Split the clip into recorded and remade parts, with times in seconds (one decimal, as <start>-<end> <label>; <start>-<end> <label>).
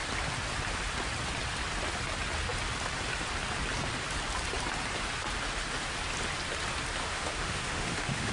0.0-7.0 recorded; 7.0-8.3 remade